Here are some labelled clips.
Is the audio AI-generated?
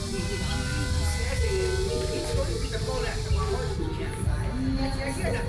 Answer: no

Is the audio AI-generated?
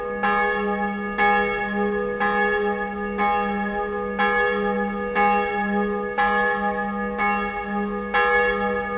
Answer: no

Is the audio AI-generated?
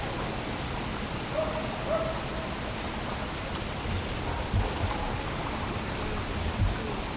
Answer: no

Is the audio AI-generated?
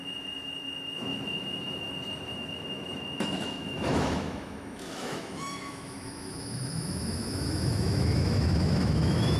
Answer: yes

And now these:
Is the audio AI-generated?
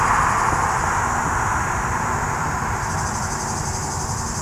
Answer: no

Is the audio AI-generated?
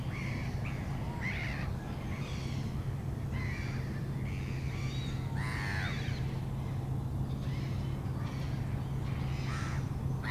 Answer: no